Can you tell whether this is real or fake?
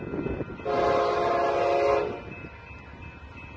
real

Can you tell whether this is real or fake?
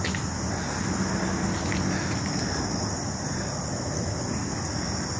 real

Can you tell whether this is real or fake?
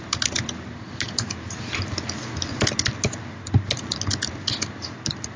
real